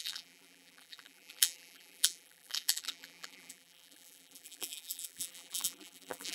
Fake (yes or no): yes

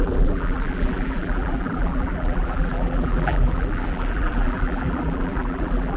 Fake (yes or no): yes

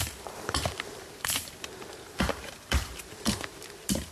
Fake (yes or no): yes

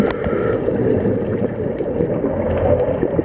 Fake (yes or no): no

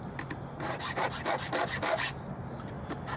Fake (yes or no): no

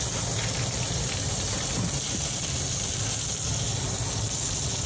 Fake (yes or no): no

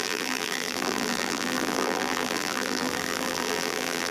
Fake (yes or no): yes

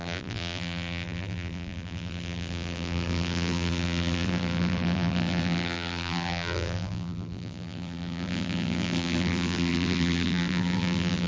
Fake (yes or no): yes